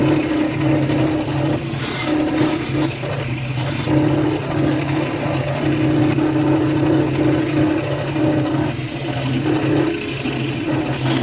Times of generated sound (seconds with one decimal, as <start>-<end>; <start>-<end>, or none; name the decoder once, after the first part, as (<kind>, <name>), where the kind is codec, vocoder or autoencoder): none